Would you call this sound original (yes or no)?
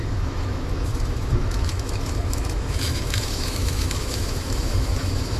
no